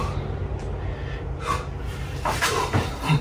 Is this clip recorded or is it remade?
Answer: recorded